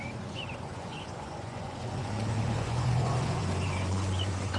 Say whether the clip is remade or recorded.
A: remade